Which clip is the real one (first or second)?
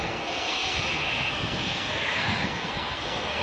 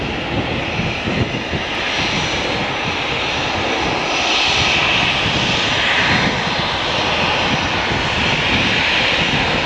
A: second